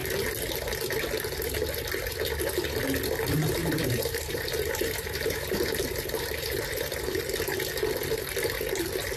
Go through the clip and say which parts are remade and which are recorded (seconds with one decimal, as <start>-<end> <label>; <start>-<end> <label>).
0.0-3.6 recorded; 3.6-7.2 remade; 7.2-9.2 recorded